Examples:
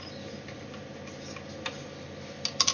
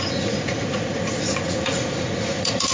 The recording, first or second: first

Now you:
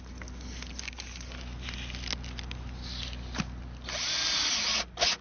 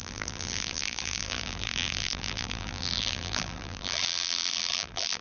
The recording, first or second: first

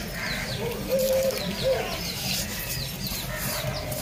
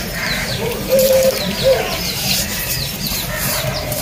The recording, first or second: first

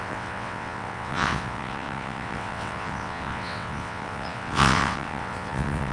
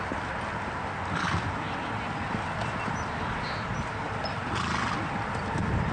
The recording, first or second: second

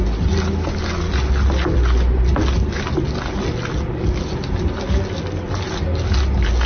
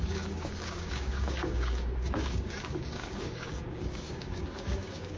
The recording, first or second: first